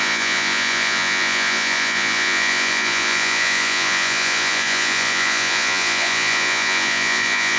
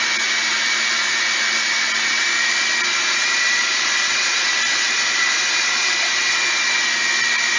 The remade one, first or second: first